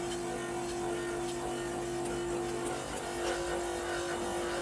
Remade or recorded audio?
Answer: recorded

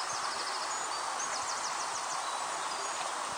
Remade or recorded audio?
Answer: recorded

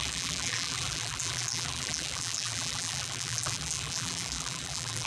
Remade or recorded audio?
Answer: remade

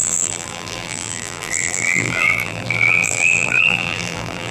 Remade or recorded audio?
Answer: remade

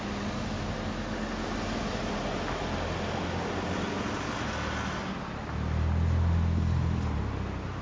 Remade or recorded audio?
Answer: recorded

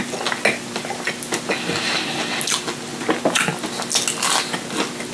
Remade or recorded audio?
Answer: recorded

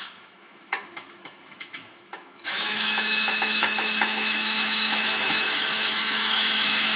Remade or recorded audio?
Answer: remade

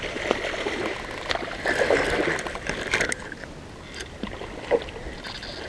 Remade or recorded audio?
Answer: recorded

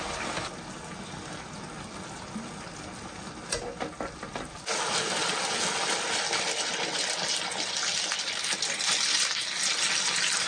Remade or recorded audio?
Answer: recorded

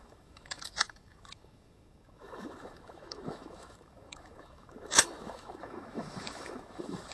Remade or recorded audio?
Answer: remade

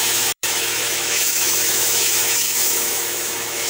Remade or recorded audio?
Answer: remade